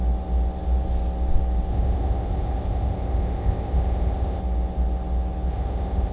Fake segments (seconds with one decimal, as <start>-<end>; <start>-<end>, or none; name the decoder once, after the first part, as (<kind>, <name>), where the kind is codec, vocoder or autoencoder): 1.7-4.4 (codec, ZipCodec); 5.5-6.1

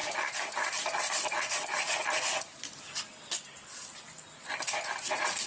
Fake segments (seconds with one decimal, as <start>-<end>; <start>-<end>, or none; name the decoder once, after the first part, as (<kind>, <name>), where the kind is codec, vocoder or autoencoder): none

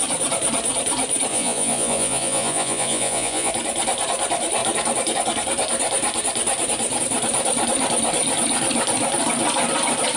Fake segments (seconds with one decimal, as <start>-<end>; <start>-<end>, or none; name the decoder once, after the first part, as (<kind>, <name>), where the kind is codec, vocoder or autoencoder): 1.3-3.5 (vocoder, Vocos)

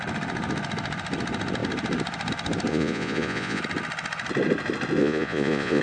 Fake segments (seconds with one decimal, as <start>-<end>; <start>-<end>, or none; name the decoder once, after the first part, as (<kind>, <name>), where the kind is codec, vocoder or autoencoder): 2.7-3.6 (vocoder, Vocos); 5.0-5.8

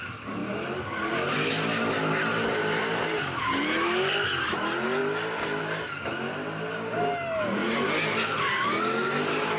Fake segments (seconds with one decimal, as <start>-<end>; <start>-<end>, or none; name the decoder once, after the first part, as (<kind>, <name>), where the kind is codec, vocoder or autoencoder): none

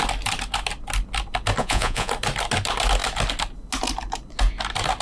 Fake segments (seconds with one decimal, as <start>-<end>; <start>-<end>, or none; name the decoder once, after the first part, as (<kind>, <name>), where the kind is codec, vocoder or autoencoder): 1.6-2.1 (vocoder, Vocos)

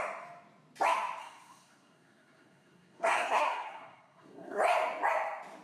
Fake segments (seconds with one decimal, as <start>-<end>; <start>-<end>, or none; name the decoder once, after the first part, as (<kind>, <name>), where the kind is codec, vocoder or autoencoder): 1.2-4.6 (codec, SNAC)

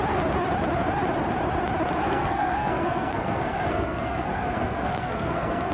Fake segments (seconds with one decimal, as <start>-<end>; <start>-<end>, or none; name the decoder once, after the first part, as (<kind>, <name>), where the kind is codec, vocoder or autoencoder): 2.0-5.7 (codec, SNAC)